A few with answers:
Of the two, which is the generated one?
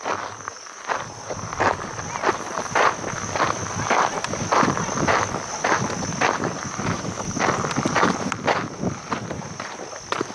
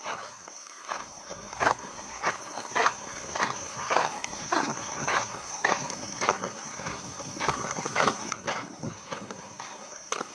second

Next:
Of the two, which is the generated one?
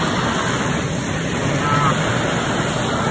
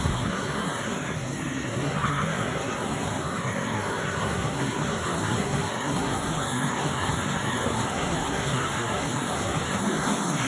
second